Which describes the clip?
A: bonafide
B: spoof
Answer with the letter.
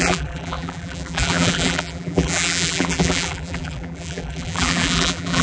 B